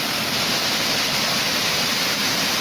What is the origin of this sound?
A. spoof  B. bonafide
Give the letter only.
B